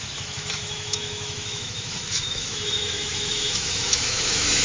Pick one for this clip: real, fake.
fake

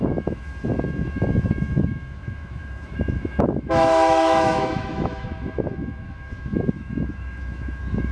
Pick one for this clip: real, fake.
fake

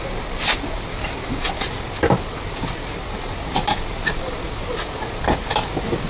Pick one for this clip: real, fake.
real